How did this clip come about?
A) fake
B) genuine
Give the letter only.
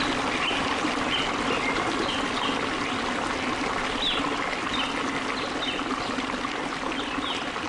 B